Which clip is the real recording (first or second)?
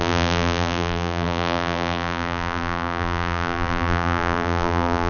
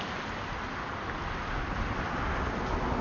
second